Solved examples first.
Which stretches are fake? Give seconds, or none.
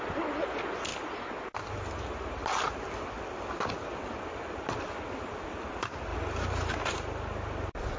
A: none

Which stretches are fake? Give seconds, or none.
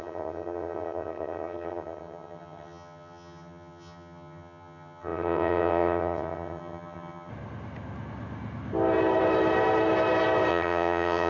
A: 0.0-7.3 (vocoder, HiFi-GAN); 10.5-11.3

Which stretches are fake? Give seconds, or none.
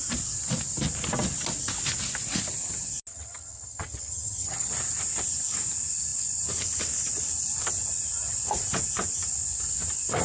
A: 3.1-4.7 (vocoder, HiFi-GAN)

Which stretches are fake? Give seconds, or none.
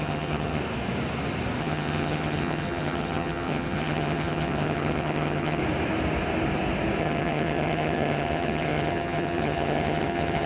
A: 0.0-0.6 (vocoder, HiFi-GAN); 1.6-5.6; 7.0-10.5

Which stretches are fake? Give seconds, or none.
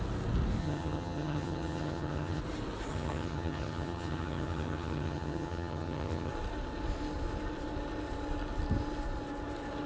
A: 0.6-2.4 (vocoder, HiFi-GAN); 2.9-6.3